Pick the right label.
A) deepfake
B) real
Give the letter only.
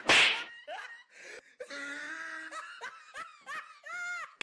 B